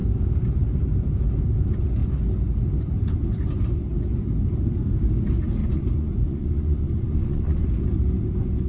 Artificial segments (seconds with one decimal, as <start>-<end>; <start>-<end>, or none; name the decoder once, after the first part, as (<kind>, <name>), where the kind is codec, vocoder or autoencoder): 5.6-7.7 (vocoder, Vocos)